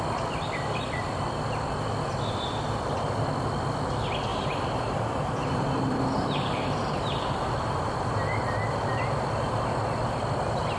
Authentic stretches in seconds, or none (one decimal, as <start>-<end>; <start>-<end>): 0.0-4.3; 7.7-10.8